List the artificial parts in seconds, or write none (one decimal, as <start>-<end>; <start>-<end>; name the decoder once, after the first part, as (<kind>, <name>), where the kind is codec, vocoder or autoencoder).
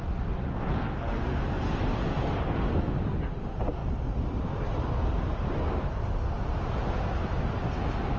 none